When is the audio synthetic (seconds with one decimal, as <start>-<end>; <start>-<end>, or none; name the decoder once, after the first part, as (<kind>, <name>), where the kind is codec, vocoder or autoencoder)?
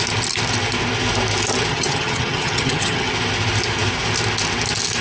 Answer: 1.7-3.1 (vocoder, HiFi-GAN)